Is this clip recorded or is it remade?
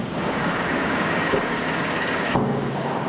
remade